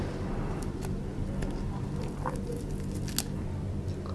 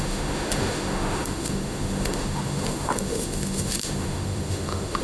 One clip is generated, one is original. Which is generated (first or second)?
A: second